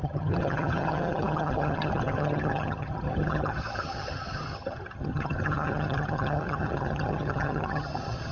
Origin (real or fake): fake